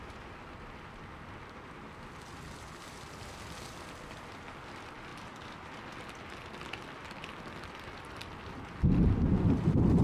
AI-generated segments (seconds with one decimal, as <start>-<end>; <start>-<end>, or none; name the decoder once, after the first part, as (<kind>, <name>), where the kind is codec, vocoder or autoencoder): none